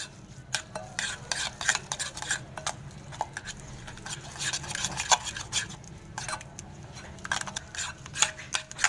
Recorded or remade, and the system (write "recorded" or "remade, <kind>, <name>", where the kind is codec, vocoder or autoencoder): recorded